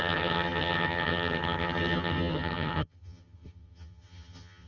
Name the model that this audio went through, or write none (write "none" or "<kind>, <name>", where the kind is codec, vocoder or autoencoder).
vocoder, HiFi-GAN